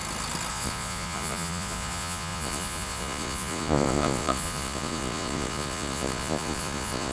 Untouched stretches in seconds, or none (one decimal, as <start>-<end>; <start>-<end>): 0.0-0.5